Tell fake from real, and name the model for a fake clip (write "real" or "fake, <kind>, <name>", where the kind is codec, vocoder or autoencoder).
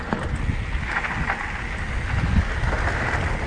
real